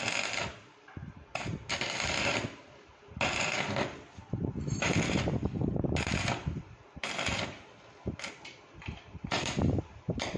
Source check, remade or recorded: remade